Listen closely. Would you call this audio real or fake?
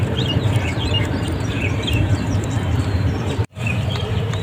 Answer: fake